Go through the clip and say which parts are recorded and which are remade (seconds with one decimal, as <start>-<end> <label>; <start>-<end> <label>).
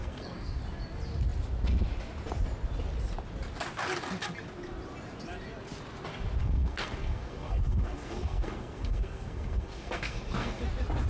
0.0-0.6 remade; 0.6-6.4 recorded; 6.4-10.6 remade; 10.6-11.1 recorded